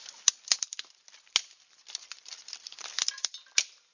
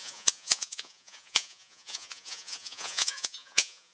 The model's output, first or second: second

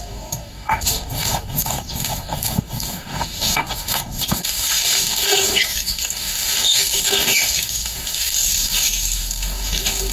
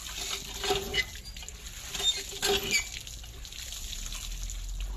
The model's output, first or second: first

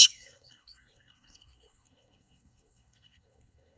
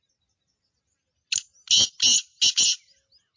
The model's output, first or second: first